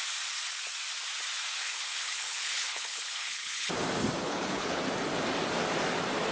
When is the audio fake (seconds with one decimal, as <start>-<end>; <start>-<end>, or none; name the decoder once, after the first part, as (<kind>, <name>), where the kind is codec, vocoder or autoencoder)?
1.6-3.7 (codec, HILCodec); 4.2-4.8